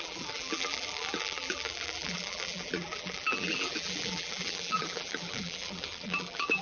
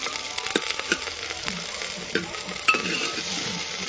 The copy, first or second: first